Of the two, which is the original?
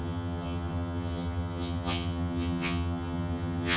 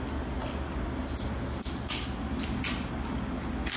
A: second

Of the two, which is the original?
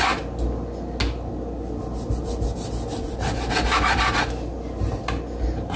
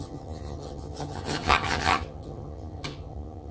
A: first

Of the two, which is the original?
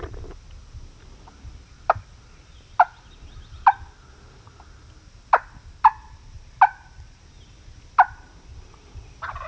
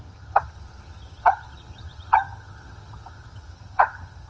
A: first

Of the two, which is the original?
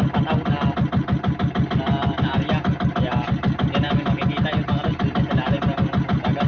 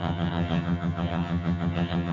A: first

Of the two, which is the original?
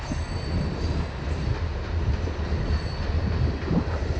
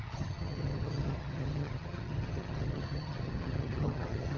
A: first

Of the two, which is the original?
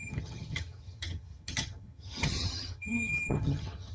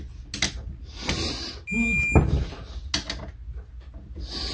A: second